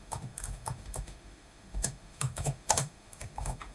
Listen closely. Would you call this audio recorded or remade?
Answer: remade